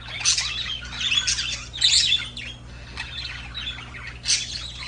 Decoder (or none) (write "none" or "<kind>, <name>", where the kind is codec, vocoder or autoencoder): none